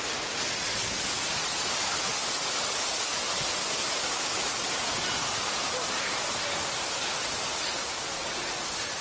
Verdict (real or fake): real